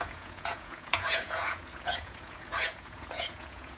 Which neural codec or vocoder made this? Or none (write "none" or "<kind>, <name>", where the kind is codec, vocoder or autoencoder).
vocoder, Vocos